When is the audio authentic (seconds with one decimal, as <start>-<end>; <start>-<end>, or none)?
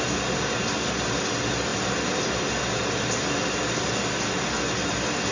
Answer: 0.0-5.3